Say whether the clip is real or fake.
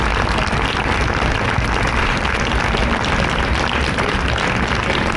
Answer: real